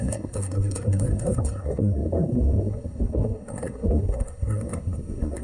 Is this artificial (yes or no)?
yes